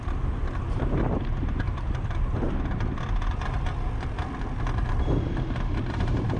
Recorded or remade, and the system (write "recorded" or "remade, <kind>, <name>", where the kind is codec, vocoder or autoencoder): recorded